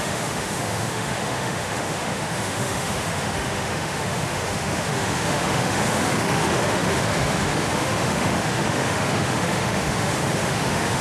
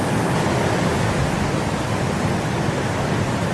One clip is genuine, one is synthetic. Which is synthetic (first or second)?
first